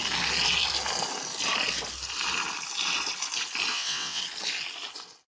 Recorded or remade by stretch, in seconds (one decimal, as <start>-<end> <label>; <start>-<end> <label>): 0.0-3.7 recorded; 3.7-4.2 remade; 4.2-5.3 recorded